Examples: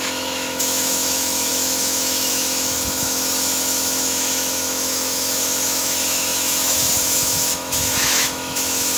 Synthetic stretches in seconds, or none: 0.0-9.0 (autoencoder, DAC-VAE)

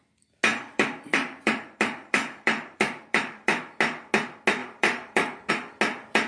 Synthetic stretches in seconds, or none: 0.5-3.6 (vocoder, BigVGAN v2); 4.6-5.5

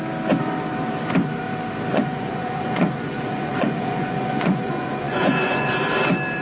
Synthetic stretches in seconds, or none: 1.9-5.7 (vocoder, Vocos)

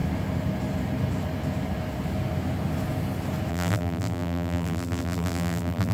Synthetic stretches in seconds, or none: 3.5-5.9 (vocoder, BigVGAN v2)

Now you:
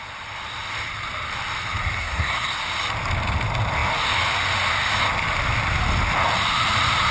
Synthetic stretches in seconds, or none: 2.0-2.5 (codec, SNAC)

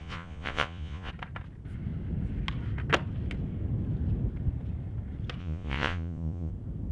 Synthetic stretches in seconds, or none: 0.0-1.1 (vocoder, Vocos); 5.4-6.5

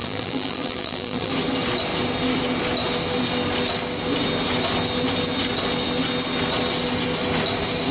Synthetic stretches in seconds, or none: 0.0-1.3 (vocoder, BigVGAN v2)